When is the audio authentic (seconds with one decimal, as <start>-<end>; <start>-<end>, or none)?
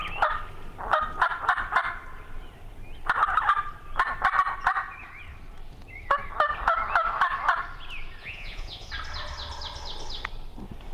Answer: 0.0-8.2; 8.9-10.9